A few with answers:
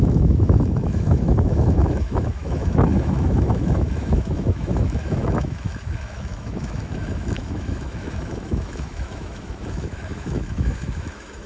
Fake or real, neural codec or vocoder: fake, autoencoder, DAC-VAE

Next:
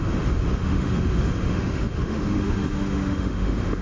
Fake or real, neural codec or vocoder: fake, autoencoder, DAC-VAE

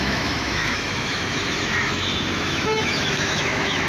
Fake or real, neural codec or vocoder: fake, autoencoder, DAC-VAE